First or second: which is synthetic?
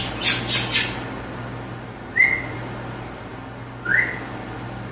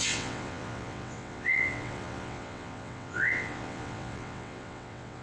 second